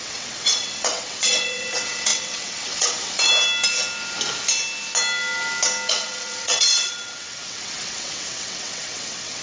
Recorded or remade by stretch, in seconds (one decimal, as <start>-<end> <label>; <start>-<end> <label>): 0.0-3.3 remade; 3.3-5.9 recorded; 5.9-9.4 remade